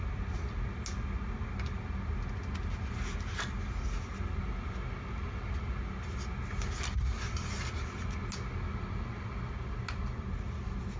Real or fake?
real